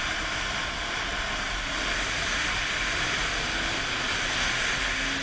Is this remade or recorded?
recorded